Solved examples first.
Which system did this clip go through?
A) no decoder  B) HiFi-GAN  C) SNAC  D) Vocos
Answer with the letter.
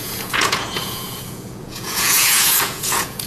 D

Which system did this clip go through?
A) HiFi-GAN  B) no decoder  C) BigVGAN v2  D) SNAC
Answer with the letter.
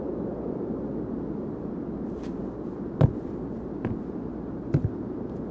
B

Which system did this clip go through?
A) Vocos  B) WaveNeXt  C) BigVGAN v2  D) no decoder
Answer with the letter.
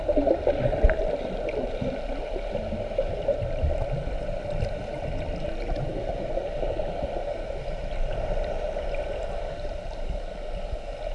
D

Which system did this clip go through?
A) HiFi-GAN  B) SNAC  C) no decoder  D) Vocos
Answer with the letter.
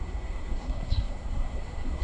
B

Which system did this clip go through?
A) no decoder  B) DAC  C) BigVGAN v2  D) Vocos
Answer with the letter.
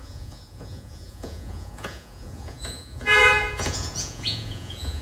D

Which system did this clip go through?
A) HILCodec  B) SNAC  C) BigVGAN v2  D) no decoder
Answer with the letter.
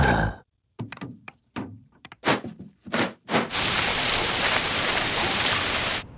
C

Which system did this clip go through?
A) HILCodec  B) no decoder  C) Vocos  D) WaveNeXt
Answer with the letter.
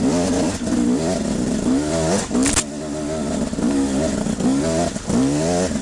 B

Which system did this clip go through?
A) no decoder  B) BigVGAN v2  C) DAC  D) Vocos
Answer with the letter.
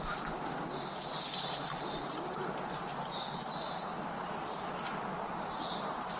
A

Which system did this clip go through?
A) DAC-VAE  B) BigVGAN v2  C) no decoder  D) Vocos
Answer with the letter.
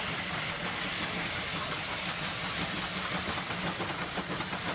C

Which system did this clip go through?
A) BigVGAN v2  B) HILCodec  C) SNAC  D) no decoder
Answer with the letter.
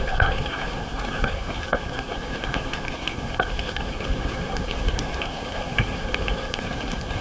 C